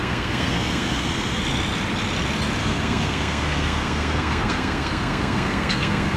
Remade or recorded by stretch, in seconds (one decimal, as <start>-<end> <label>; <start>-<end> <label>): 0.0-1.4 remade; 1.4-2.6 recorded; 2.6-6.2 remade